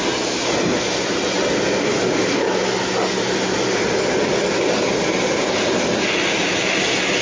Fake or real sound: real